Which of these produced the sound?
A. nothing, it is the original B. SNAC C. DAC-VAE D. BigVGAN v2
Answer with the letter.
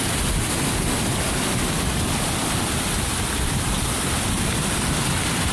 A